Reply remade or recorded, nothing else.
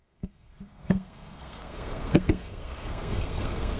remade